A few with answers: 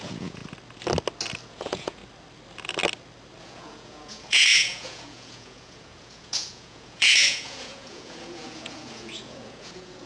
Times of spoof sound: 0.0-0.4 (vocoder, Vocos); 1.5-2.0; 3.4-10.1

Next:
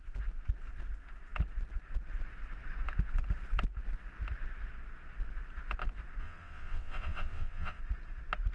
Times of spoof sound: 6.2-7.8 (vocoder, WaveNeXt)

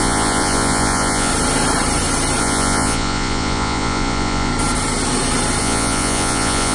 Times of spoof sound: 0.0-1.3 (vocoder, Vocos); 2.4-4.5; 5.6-6.7

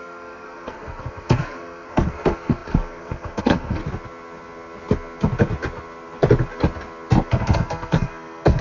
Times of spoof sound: 0.0-3.8 (codec, SNAC); 7.3-8.6

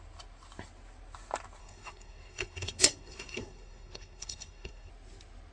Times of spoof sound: 1.6-4.9 (codec, SNAC)

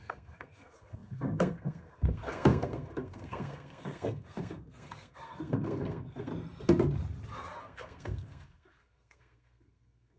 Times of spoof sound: 0.0-6.3 (codec, SNAC); 7.6-10.2

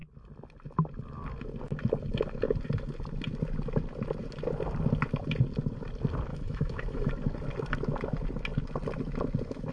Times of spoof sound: 6.3-7.1 (autoencoder, DAC-VAE)

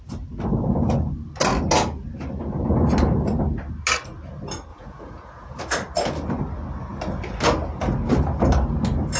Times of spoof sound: 4.7-5.6 (vocoder, Vocos)